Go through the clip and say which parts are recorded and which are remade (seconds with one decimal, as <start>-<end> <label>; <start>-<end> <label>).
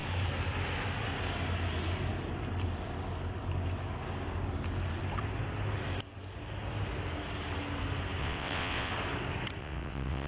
0.0-8.2 recorded; 8.2-8.9 remade; 8.9-9.6 recorded; 9.6-10.3 remade